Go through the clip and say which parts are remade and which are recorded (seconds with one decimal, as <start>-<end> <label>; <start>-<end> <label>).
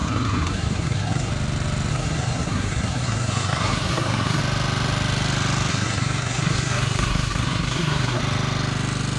0.0-1.3 remade; 1.3-1.9 recorded; 1.9-4.4 remade; 4.4-5.7 recorded; 5.7-8.2 remade; 8.2-9.2 recorded